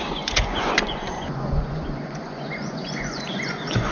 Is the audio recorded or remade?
remade